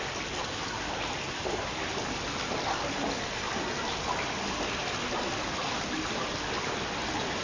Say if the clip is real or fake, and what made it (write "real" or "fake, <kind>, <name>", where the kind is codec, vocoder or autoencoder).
real